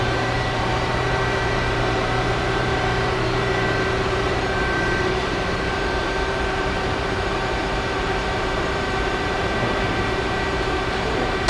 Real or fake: fake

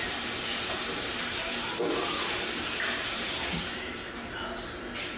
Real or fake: fake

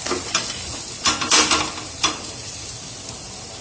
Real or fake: real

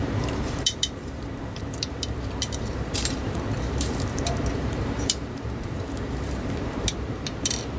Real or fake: fake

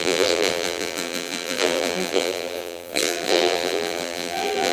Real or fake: fake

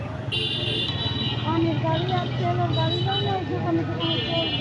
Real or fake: real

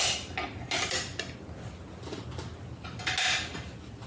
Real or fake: real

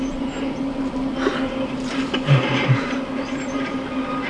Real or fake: fake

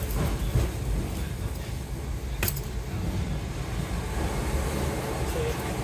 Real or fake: real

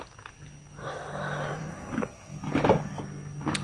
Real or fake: real